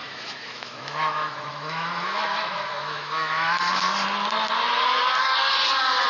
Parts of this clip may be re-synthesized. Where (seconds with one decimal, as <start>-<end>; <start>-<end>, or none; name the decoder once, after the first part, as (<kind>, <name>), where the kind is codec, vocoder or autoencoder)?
0.0-3.7 (autoencoder, DAC-VAE)